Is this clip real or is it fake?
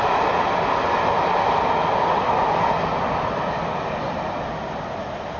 real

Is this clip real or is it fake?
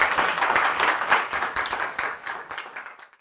fake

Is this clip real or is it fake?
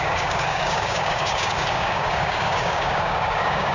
fake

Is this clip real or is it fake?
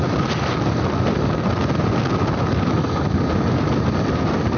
real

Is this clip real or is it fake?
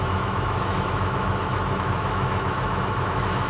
fake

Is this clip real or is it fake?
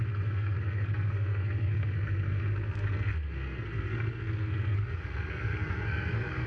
fake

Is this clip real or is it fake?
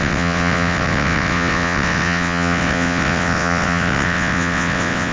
fake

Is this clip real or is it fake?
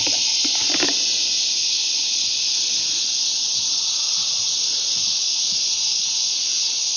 real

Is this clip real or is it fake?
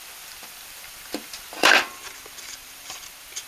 fake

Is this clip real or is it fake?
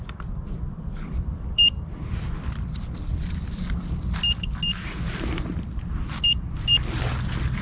real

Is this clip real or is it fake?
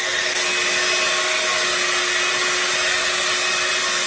real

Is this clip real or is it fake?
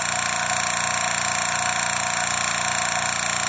real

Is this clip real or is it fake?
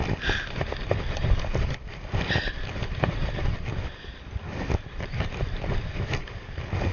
real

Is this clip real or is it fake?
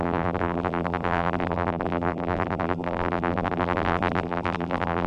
fake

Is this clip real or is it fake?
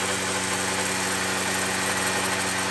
real